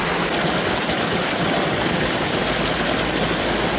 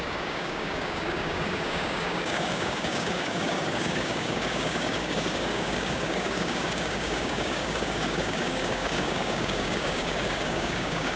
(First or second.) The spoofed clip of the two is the second